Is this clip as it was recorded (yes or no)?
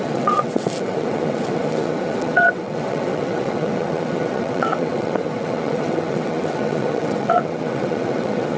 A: no